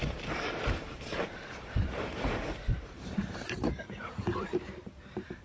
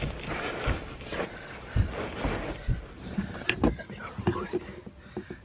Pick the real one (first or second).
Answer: second